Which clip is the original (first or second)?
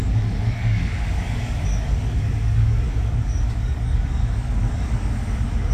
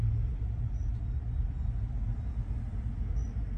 second